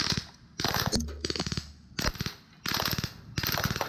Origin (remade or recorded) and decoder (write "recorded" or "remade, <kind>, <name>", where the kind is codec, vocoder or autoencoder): recorded